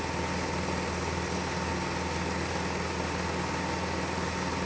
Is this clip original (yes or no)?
yes